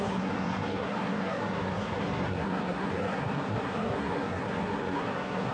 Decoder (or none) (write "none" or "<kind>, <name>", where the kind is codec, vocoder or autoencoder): codec, SNAC